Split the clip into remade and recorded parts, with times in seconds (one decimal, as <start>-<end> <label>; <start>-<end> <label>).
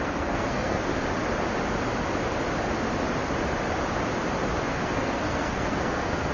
0.0-0.9 remade; 0.9-4.7 recorded; 4.7-6.3 remade